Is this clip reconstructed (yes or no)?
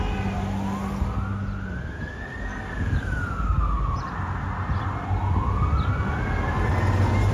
no